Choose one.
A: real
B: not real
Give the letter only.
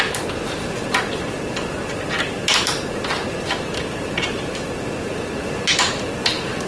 A